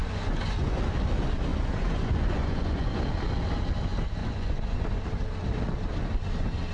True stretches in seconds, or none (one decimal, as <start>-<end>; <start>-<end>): 0.8-1.5; 3.0-4.2; 5.0-6.7